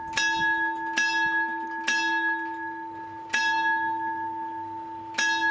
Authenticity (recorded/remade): recorded